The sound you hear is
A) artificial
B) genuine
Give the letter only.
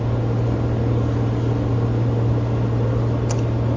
A